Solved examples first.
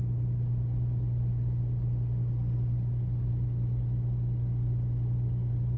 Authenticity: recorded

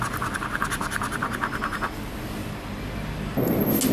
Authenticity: recorded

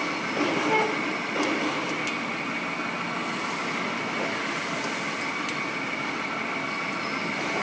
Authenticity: recorded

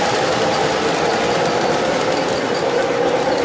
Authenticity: recorded